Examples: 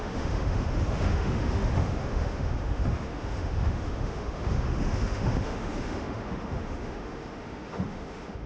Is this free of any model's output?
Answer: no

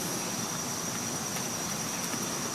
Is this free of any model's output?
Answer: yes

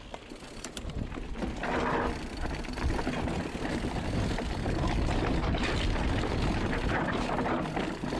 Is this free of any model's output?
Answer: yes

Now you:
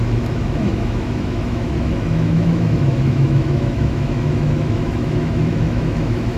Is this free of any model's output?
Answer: no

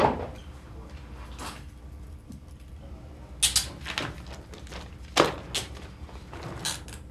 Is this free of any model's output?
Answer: yes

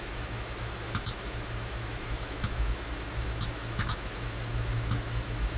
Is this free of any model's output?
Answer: no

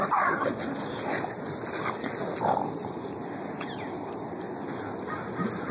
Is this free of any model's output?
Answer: yes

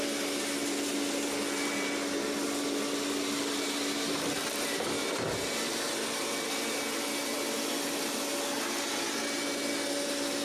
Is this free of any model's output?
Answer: yes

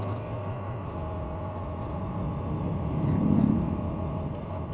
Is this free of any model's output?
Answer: yes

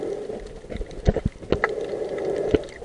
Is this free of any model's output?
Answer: yes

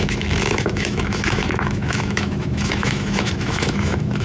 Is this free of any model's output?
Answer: no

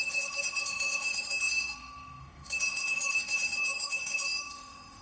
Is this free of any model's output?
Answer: no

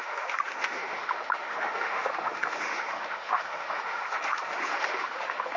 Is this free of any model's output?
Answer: no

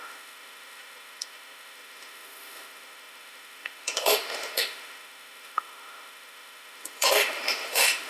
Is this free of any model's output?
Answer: no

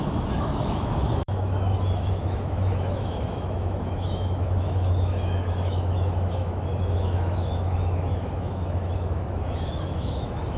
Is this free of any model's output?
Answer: no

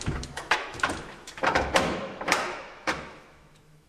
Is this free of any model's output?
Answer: no